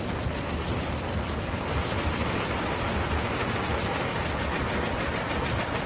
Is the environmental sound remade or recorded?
recorded